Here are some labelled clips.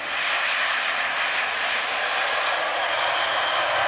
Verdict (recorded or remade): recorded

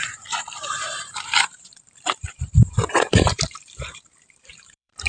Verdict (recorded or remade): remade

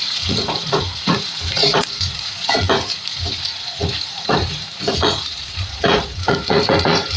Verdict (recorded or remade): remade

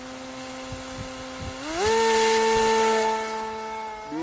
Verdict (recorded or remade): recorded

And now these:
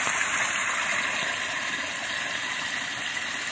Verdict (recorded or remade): recorded